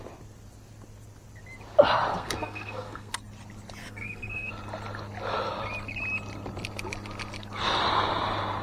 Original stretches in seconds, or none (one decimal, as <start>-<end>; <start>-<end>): 0.0-2.1; 3.1-3.8; 4.5-8.6